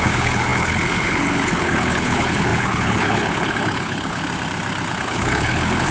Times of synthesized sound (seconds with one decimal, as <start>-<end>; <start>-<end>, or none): 0.0-4.2; 4.9-5.9